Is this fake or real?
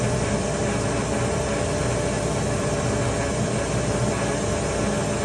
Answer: real